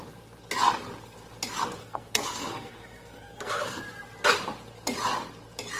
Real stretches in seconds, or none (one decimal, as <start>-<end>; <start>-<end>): 0.0-1.8; 3.8-5.8